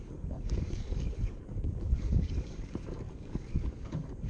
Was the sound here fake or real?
fake